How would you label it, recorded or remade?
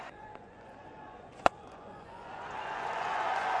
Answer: remade